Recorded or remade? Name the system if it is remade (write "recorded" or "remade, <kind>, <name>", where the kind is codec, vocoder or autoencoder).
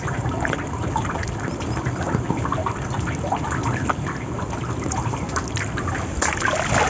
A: recorded